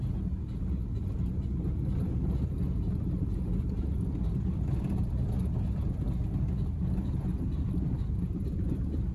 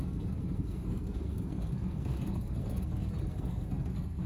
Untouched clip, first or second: first